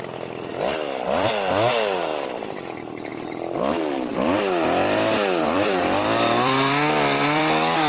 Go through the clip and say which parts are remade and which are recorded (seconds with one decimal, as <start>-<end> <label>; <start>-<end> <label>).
0.0-0.5 recorded; 0.5-1.3 remade; 1.3-2.1 recorded; 2.1-3.1 remade; 3.1-4.1 recorded; 4.1-7.4 remade; 7.4-7.9 recorded